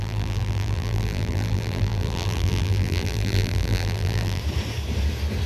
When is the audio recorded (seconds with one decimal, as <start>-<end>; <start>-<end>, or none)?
4.4-5.5